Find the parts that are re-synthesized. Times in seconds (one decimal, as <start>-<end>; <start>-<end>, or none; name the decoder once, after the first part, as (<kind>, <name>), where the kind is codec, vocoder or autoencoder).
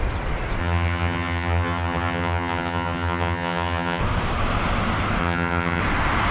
0.6-4.0 (vocoder, HiFi-GAN); 5.2-5.8